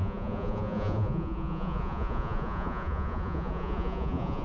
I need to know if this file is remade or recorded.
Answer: remade